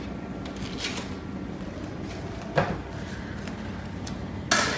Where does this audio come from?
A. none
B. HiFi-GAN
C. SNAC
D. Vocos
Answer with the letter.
A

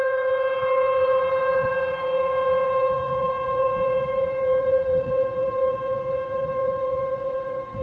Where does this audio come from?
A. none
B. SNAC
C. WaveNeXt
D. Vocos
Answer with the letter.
C